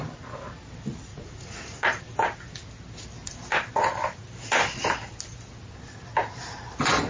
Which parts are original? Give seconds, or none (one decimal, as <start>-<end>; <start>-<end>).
0.0-1.1; 2.0-7.1